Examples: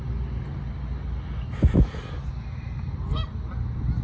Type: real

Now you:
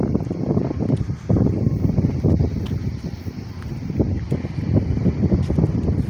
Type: real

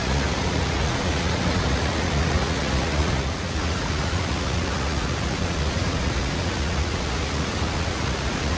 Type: fake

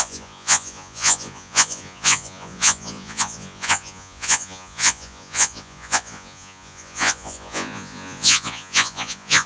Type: fake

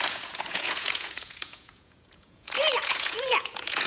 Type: fake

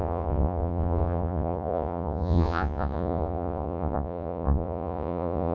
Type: fake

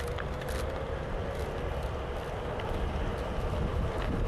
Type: real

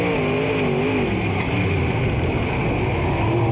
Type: real